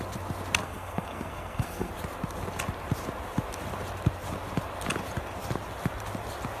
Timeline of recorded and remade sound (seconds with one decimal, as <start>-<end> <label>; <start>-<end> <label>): 0.0-0.6 recorded; 0.6-1.9 remade; 1.9-6.6 recorded